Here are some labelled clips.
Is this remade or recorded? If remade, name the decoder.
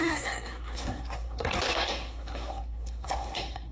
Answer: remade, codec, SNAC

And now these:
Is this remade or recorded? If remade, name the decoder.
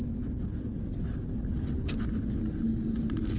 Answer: recorded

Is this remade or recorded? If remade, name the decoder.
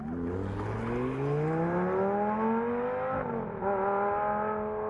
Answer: recorded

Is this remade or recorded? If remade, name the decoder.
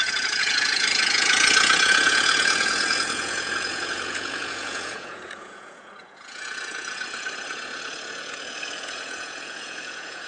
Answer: remade, vocoder, Vocos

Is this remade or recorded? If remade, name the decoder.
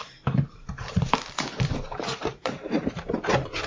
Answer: remade, vocoder, BigVGAN v2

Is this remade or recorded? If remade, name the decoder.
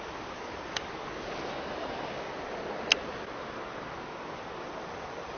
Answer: recorded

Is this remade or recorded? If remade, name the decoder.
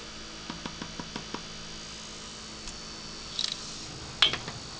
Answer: recorded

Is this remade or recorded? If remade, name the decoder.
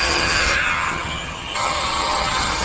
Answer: remade, vocoder, HiFi-GAN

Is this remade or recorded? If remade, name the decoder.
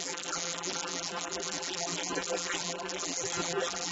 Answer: remade, vocoder, BigVGAN v2